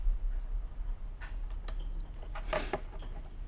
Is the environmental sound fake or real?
real